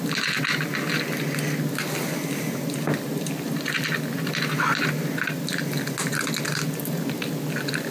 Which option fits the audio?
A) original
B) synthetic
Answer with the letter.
A